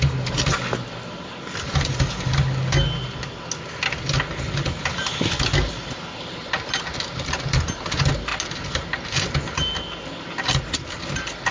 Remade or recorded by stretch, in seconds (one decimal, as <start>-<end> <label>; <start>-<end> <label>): 0.0-11.5 recorded